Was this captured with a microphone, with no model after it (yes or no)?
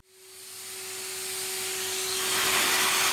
yes